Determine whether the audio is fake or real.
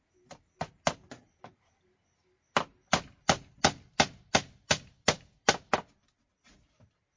real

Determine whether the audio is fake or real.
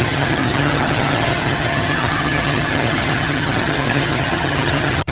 fake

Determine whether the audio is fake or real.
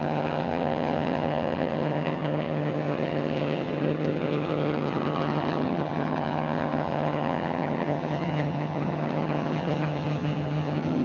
fake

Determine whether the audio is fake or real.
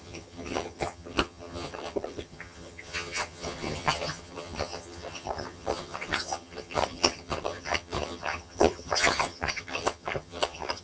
fake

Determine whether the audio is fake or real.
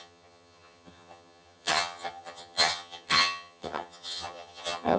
fake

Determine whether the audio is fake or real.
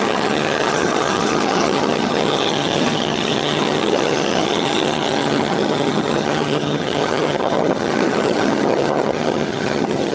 fake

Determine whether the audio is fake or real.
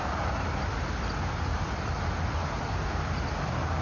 real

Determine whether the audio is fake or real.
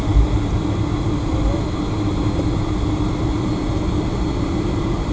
real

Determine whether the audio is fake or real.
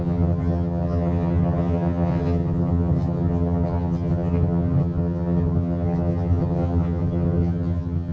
fake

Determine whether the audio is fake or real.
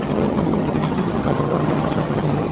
fake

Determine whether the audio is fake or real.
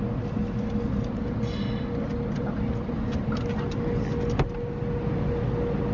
real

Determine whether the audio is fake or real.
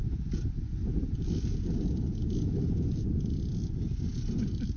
real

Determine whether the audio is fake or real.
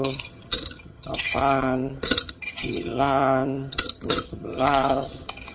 fake